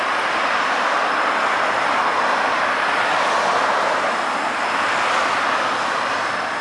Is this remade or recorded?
recorded